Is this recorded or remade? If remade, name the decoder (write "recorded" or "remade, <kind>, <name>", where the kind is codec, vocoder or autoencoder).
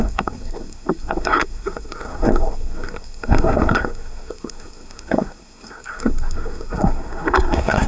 remade, codec, SNAC